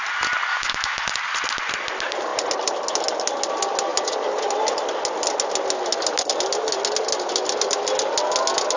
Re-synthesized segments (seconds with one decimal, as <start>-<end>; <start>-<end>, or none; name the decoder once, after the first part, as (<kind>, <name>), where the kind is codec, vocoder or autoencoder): 0.5-1.1 (autoencoder, DAC-VAE)